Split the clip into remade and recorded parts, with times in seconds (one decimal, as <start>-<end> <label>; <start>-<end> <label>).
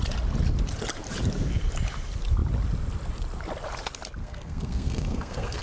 0.0-4.2 recorded; 4.2-5.6 remade